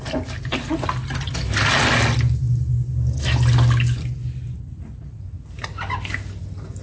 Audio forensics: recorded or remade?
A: recorded